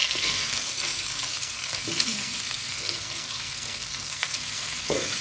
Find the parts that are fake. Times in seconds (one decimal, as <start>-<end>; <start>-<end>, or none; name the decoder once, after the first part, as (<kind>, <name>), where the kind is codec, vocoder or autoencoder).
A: 0.0-5.2 (codec, SNAC)